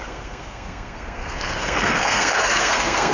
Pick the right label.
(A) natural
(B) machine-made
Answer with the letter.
B